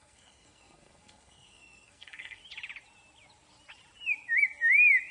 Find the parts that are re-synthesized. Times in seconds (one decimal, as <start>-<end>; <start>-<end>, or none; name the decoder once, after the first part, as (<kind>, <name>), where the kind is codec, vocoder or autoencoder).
0.0-2.4 (codec, SNAC)